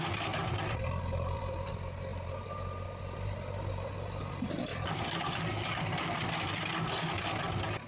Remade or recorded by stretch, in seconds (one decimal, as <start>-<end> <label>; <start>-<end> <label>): 0.0-4.7 recorded; 4.7-6.7 remade; 6.7-7.9 recorded